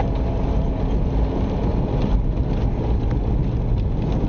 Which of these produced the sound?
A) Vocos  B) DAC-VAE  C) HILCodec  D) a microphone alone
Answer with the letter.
D